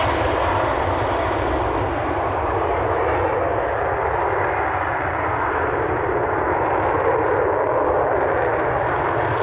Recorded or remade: recorded